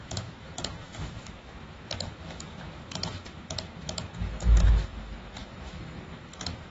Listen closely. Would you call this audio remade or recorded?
remade